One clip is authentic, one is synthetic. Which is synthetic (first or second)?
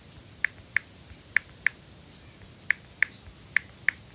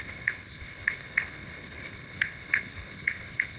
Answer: second